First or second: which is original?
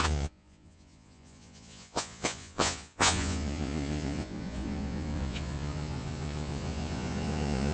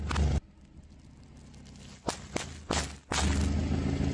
second